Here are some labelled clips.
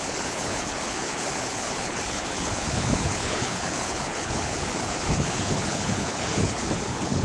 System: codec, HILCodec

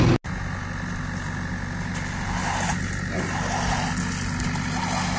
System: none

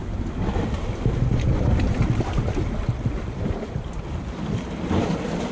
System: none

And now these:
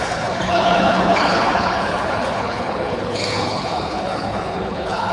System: codec, HILCodec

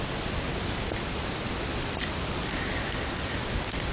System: none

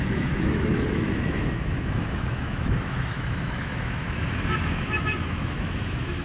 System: autoencoder, DAC-VAE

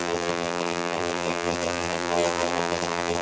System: vocoder, BigVGAN v2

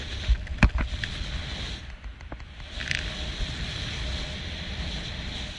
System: none